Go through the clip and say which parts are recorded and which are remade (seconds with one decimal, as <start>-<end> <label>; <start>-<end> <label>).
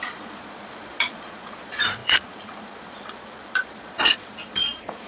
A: 0.0-5.1 remade